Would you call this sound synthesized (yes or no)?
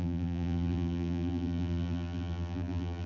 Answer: yes